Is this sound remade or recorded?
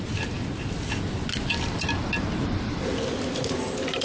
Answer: recorded